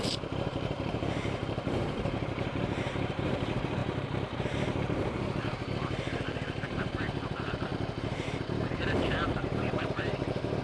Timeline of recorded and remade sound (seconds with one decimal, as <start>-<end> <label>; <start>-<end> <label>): 0.0-7.7 remade; 7.7-8.4 recorded; 8.4-10.6 remade